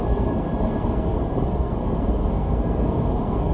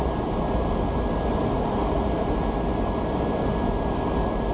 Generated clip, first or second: first